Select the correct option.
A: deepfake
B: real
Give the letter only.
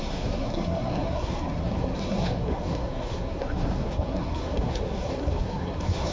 A